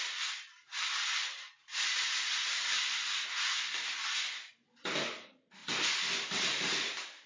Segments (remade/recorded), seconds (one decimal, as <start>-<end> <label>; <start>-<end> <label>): 0.0-7.3 recorded